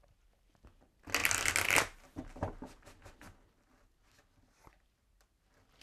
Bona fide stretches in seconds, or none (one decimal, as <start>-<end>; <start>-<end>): 0.0-5.8